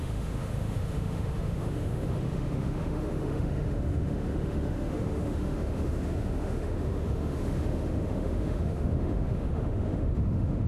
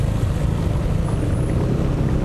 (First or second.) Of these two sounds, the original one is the second